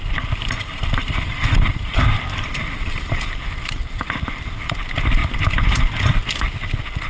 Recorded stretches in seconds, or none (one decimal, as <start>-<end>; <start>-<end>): 5.2-5.7